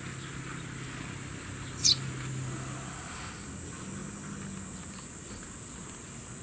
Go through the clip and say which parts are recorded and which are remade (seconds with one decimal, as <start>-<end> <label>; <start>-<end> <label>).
0.0-6.4 recorded